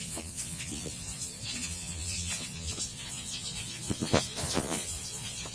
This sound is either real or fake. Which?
fake